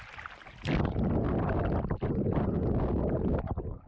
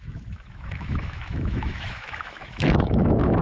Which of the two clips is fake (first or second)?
second